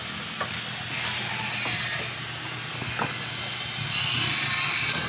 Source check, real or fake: real